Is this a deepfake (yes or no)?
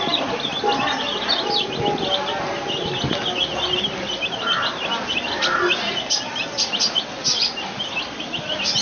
no